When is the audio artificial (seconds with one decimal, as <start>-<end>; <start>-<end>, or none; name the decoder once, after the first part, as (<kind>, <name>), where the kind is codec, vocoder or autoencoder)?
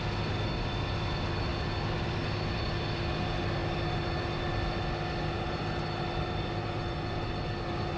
none